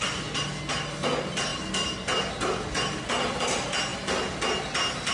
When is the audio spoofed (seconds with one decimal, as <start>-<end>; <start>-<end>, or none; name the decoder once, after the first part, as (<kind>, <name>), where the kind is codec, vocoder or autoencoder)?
none